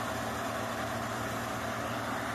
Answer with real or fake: real